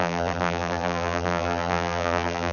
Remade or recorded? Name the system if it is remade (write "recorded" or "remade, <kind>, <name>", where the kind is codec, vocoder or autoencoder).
remade, vocoder, BigVGAN v2